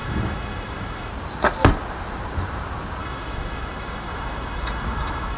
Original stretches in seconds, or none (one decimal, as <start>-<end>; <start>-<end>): 1.1-3.0